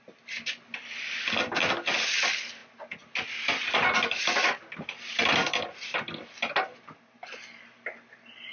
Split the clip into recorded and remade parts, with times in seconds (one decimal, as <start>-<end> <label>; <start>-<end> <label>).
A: 0.0-5.4 recorded; 5.4-6.1 remade; 6.1-8.5 recorded